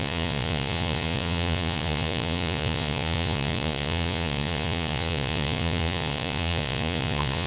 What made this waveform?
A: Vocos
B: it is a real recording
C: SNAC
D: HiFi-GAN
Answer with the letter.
A